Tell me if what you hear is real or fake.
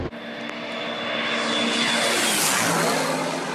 real